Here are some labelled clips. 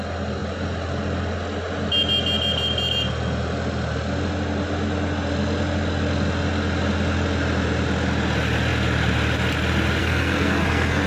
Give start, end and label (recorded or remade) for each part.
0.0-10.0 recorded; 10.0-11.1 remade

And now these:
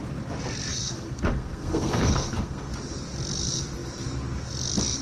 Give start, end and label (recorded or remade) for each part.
0.0-0.7 recorded; 0.7-2.7 remade; 2.7-5.0 recorded

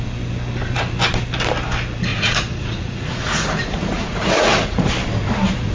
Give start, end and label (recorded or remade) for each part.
0.0-2.1 recorded; 2.1-4.9 remade; 4.9-5.7 recorded

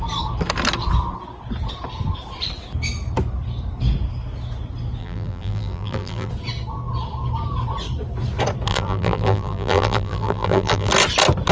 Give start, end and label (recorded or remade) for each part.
0.0-5.0 recorded; 5.0-6.3 remade; 6.3-8.7 recorded; 8.7-10.9 remade; 10.9-11.5 recorded

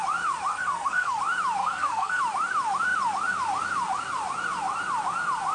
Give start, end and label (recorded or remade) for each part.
0.0-0.5 recorded; 0.5-1.2 remade; 1.2-1.6 recorded; 1.6-2.2 remade; 2.2-5.5 recorded

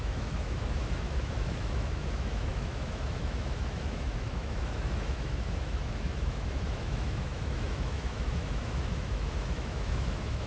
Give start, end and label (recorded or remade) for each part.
0.0-10.5 remade

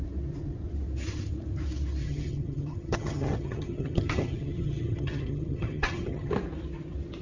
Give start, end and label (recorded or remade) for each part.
0.0-2.0 recorded; 2.0-6.3 remade; 6.3-7.2 recorded

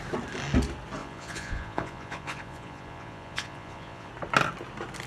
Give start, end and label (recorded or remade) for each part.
0.0-1.0 recorded; 1.0-4.1 remade; 4.1-5.1 recorded